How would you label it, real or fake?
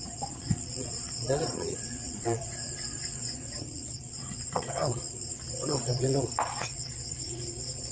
fake